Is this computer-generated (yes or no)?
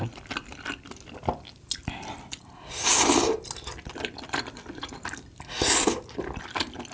no